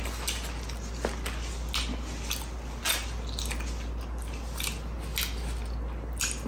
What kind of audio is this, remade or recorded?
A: recorded